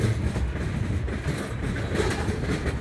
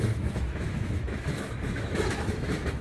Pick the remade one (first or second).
second